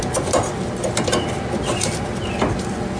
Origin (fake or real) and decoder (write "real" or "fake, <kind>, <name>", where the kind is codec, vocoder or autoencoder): real